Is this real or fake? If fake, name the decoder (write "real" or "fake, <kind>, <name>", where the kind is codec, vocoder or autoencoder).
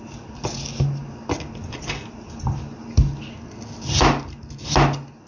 real